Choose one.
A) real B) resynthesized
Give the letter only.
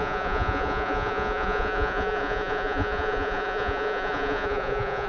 B